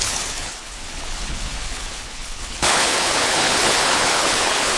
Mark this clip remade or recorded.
remade